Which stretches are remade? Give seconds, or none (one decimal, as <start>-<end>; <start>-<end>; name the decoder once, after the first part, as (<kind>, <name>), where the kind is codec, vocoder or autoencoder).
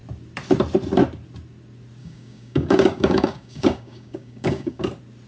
2.0-4.8 (codec, DAC)